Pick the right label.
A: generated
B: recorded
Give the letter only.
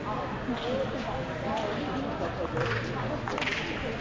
B